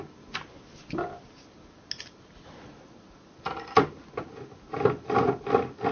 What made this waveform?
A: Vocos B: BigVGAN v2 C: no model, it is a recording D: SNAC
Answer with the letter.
C